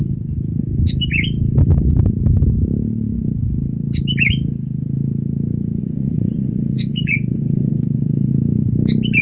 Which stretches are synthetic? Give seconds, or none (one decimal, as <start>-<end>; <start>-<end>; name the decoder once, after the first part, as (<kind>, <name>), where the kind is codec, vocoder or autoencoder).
5.8-8.3 (vocoder, Vocos)